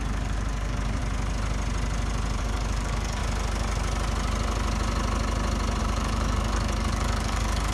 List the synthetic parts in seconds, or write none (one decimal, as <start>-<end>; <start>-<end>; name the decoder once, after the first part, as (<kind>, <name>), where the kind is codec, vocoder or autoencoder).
0.0-1.0 (codec, DAC); 2.4-3.2; 5.8-7.7